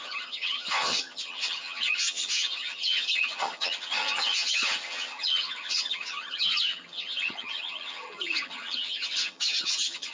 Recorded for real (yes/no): no